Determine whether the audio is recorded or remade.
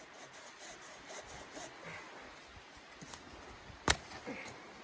recorded